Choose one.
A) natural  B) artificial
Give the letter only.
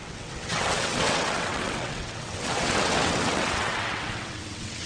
B